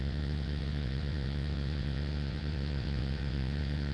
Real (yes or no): no